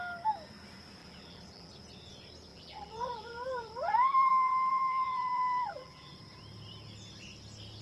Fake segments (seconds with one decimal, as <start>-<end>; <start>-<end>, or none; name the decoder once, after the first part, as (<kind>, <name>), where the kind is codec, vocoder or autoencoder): 1.0-1.7 (vocoder, BigVGAN v2); 2.5-6.1